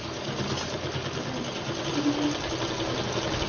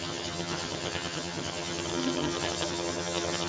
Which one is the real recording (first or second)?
first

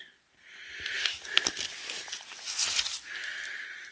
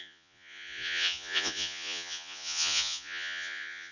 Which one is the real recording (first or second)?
first